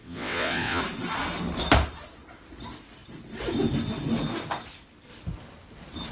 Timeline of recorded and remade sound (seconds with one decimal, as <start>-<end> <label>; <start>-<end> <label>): 0.0-0.8 remade; 0.8-6.1 recorded